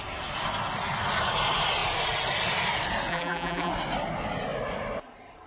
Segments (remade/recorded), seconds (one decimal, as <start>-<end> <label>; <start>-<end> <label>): 0.0-3.1 recorded; 3.1-3.7 remade; 3.7-5.5 recorded